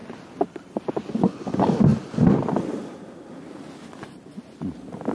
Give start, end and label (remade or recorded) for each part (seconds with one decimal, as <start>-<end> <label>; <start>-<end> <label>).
0.0-5.1 recorded